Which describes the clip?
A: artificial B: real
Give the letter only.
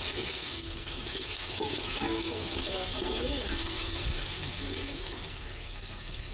A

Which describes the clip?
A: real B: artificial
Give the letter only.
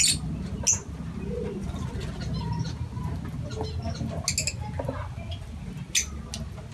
A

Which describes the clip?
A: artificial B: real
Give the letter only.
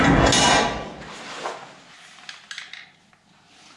B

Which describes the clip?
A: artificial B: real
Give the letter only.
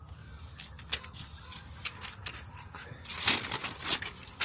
B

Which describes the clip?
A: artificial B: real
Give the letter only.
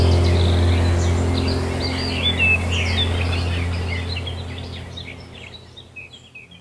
B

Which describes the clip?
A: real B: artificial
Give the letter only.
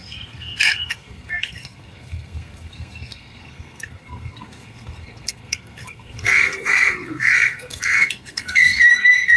B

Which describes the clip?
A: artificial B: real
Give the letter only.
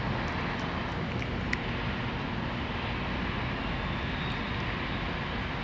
B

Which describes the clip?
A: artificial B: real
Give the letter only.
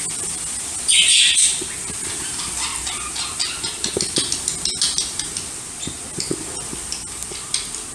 B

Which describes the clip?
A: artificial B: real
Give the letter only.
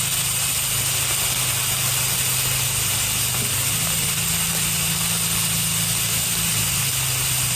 B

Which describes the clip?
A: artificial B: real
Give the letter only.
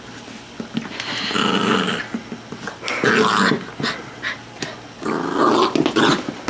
B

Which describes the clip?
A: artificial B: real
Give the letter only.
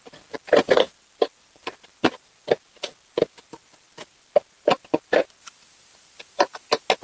B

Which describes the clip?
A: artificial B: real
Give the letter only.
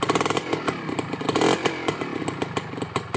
B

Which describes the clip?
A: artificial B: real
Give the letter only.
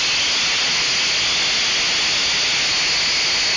B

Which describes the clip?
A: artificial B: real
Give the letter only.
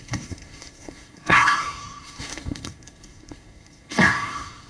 A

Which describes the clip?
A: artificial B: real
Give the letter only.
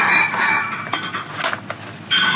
B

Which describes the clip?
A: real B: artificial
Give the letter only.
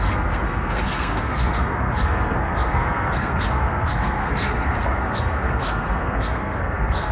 B